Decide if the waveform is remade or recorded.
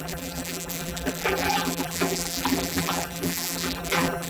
remade